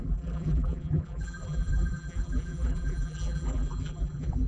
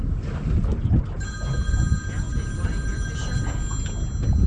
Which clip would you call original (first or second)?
second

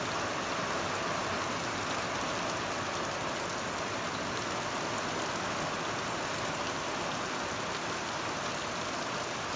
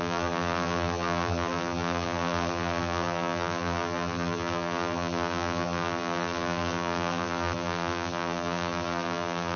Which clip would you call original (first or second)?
first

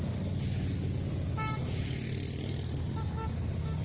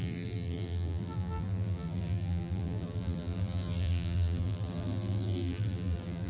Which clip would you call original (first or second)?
first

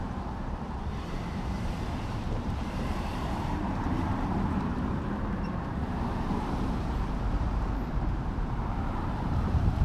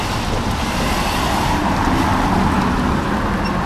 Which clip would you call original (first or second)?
second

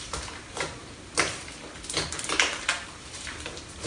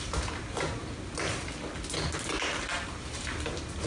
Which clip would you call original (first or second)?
second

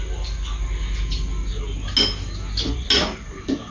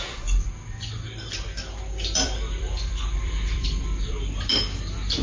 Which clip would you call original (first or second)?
first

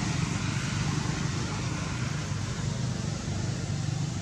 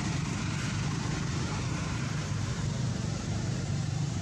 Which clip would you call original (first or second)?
first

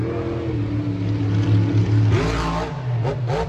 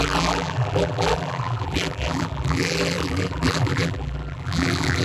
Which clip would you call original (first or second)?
first